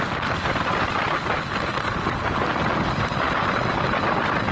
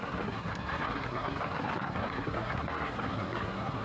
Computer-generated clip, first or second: second